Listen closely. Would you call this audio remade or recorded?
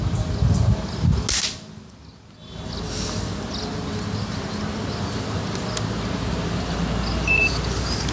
recorded